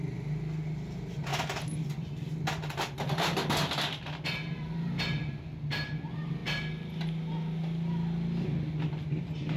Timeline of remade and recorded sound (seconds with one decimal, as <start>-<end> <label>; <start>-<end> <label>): 0.0-9.6 recorded